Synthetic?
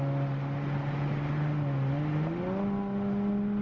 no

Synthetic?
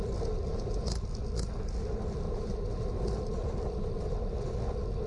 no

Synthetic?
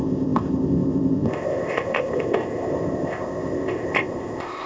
yes